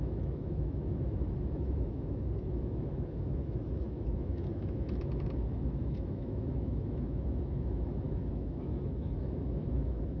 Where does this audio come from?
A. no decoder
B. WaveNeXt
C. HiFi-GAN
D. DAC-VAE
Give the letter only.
D